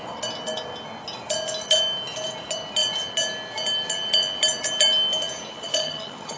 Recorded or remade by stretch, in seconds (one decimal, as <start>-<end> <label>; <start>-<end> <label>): 0.0-5.5 recorded; 5.5-6.4 remade